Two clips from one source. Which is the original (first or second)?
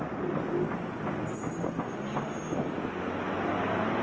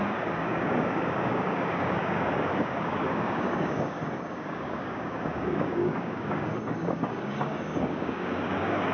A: first